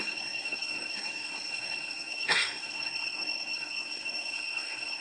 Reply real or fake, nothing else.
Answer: fake